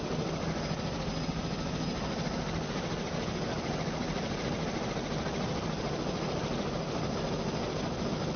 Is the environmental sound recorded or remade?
recorded